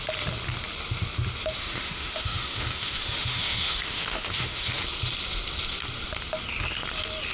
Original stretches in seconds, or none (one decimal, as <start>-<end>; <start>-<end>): 0.0-1.6; 4.8-7.3